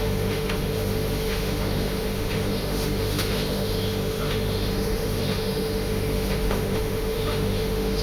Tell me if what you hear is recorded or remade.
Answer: remade